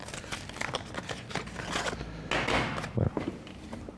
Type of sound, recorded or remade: recorded